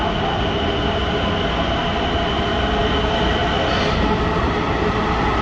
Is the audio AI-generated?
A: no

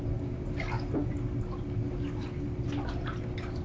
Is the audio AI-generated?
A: no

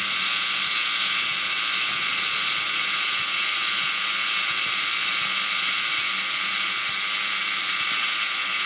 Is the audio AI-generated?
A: no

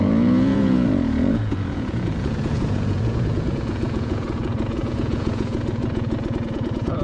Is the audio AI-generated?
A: yes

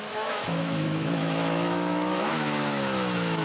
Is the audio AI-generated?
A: yes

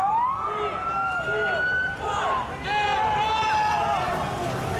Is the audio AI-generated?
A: no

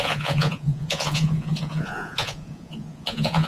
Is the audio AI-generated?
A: yes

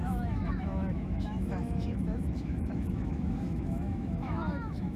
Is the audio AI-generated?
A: yes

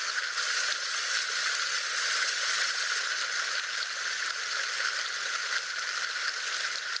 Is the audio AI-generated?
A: no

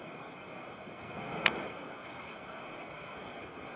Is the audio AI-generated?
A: yes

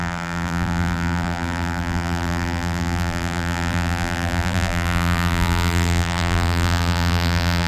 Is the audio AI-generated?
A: yes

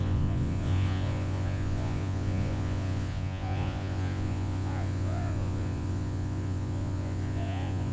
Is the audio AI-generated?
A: yes